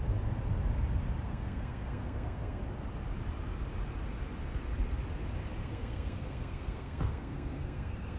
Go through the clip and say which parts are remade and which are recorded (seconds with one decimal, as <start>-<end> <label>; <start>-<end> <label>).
0.0-1.3 recorded; 1.3-2.6 remade; 2.6-5.6 recorded; 5.6-8.2 remade